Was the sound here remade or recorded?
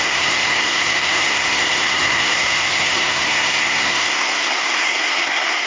remade